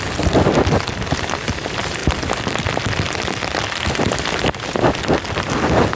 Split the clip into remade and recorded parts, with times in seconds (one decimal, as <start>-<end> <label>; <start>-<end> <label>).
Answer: 0.0-6.0 recorded